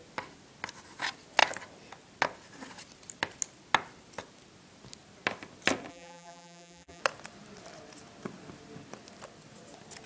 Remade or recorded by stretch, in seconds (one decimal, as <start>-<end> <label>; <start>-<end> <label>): 0.0-5.9 recorded; 5.9-7.0 remade; 7.0-10.1 recorded